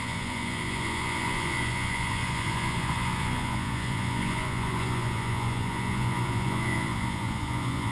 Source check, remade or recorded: remade